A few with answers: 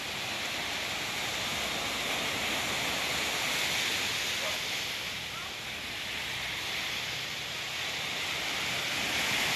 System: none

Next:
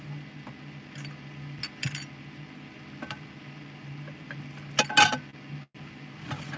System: none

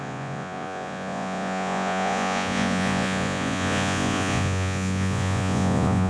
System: vocoder, Vocos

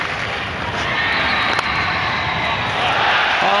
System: none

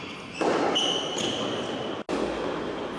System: none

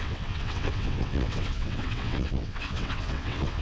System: vocoder, WaveNeXt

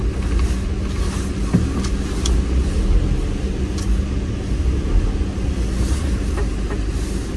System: none